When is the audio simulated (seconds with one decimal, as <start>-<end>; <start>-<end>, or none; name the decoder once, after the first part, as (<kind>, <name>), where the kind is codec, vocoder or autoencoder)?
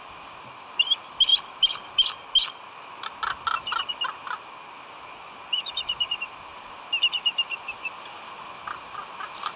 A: none